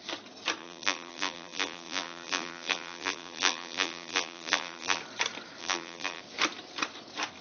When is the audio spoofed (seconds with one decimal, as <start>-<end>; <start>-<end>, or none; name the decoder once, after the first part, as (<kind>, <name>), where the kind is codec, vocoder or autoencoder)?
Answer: 0.6-5.0 (vocoder, BigVGAN v2); 5.6-6.2

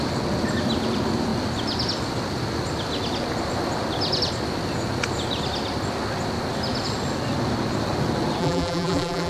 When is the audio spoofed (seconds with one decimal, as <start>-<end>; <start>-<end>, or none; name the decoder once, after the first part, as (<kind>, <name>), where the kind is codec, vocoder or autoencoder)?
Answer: 8.4-9.3 (vocoder, BigVGAN v2)

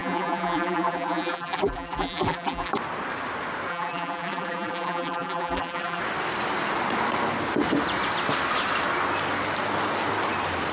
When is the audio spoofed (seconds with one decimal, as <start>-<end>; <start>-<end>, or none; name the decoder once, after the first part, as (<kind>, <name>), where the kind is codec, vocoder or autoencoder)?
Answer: 0.0-2.7 (vocoder, BigVGAN v2); 3.7-6.0

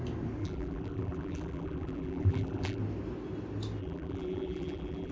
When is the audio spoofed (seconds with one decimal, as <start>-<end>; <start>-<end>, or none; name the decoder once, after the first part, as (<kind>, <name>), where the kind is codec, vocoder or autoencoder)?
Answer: 0.4-2.8 (vocoder, BigVGAN v2); 3.8-5.1